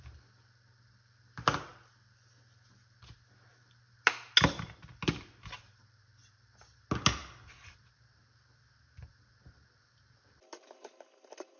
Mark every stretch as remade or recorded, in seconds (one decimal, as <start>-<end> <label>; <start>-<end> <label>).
0.0-11.6 recorded